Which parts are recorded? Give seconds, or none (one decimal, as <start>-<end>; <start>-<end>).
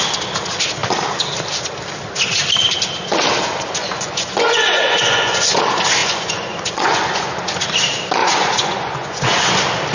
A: 0.0-3.8; 5.6-6.0; 7.6-8.2; 9.5-9.9